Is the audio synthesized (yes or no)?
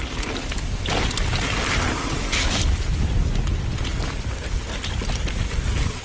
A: no